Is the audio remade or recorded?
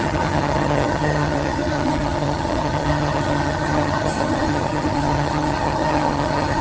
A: remade